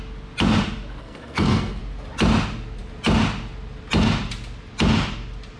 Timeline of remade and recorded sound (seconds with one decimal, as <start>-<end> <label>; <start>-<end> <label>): 0.0-1.0 recorded; 1.0-1.8 remade; 1.8-5.6 recorded